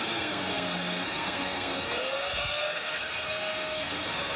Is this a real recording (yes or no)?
no